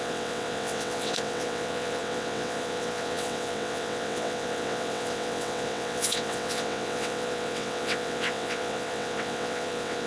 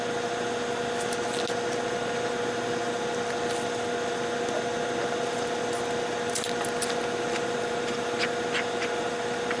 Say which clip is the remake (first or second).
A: first